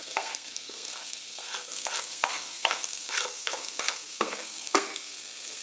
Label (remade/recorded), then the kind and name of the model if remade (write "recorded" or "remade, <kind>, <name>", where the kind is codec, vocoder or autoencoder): remade, codec, SNAC